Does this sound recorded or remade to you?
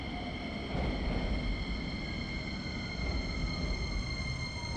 recorded